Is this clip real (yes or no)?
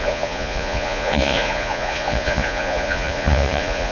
no